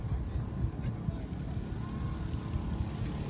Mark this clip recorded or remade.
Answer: recorded